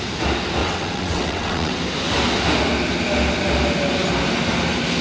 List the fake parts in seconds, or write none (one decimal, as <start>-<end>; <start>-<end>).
0.6-1.8